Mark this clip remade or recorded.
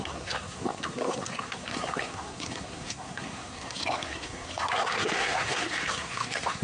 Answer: remade